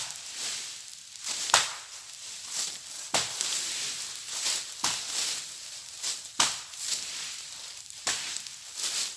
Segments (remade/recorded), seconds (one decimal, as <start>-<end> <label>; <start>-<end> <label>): 0.0-7.7 recorded; 7.7-8.3 remade; 8.3-9.2 recorded